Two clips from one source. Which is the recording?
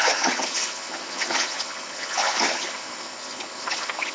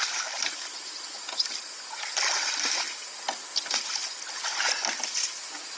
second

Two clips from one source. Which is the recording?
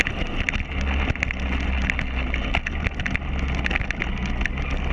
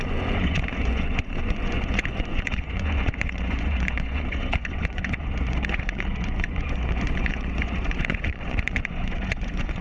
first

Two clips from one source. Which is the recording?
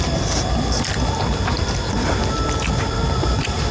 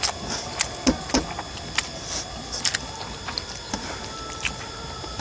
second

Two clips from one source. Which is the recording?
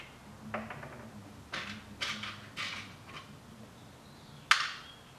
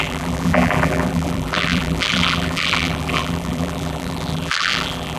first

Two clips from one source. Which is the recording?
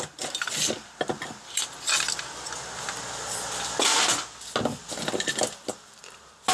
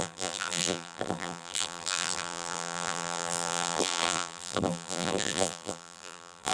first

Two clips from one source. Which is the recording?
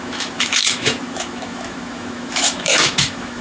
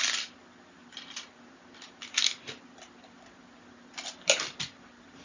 second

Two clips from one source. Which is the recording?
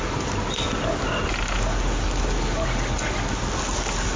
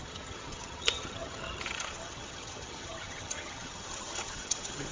first